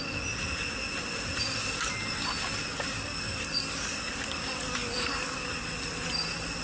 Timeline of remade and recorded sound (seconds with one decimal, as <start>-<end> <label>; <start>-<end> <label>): 0.0-2.6 recorded; 2.6-5.5 remade; 5.5-6.6 recorded